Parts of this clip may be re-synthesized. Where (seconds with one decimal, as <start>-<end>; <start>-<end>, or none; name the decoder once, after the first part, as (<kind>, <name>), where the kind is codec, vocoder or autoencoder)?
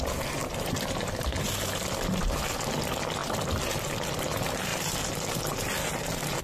0.4-1.0 (vocoder, BigVGAN v2); 3.2-4.1; 4.7-6.4